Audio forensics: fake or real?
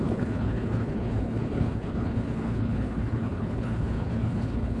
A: fake